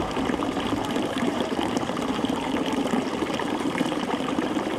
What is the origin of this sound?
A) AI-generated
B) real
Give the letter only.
A